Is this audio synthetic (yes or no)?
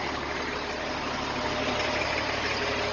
no